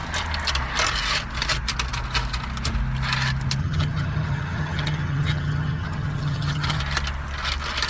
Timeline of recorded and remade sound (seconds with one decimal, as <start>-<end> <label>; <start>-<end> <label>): 0.0-3.6 recorded; 3.6-6.8 remade; 6.8-7.9 recorded